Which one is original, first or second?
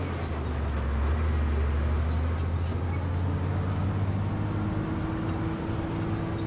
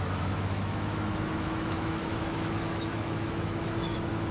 first